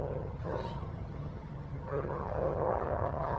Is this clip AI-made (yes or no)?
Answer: yes